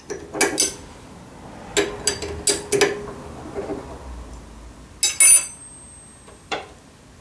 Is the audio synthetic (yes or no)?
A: no